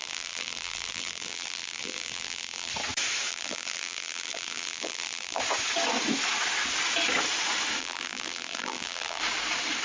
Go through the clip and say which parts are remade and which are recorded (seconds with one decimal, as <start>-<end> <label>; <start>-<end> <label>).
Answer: 0.0-2.7 remade; 2.7-3.3 recorded; 3.3-5.4 remade; 5.4-7.8 recorded; 7.8-9.2 remade; 9.2-9.8 recorded